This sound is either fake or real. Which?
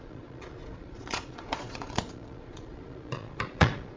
fake